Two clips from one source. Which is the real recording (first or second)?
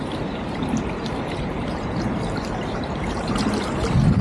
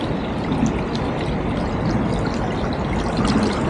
second